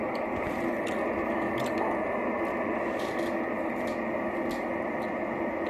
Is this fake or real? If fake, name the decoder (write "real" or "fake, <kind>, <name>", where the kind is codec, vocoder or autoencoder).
real